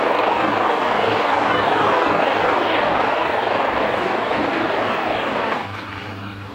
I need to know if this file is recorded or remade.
remade